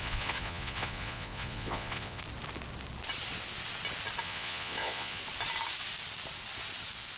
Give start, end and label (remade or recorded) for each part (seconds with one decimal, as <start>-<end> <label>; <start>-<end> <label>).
0.0-2.2 remade; 2.2-4.2 recorded; 4.2-5.2 remade; 5.2-7.2 recorded